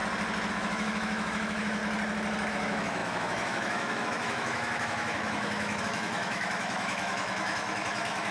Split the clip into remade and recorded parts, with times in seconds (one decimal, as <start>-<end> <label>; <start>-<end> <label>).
0.0-0.5 recorded; 0.5-1.8 remade; 1.8-2.5 recorded; 2.5-8.3 remade